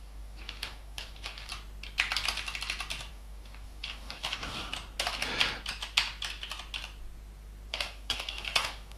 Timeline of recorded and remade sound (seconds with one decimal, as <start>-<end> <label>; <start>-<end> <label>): 0.0-1.5 remade; 1.5-3.1 recorded; 3.1-4.7 remade; 4.7-7.7 recorded; 7.7-9.0 remade